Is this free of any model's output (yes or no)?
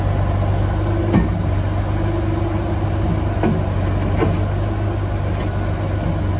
yes